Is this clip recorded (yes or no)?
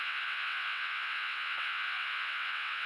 no